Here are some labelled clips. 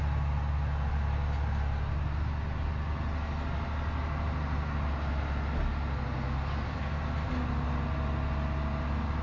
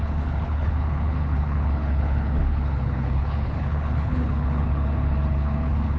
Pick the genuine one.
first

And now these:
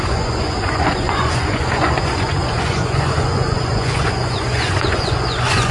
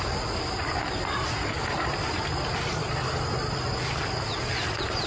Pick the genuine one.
second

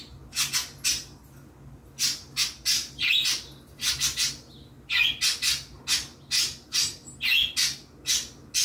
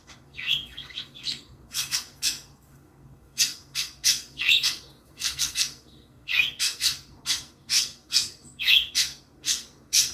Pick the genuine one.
first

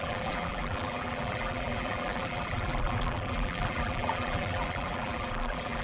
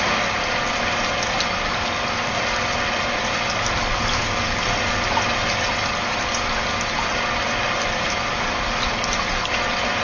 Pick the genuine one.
second